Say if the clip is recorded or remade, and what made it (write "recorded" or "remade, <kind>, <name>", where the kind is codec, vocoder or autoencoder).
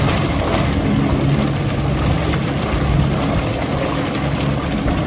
recorded